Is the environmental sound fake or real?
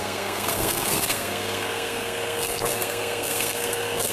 fake